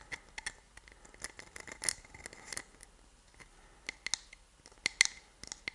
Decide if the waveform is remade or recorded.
recorded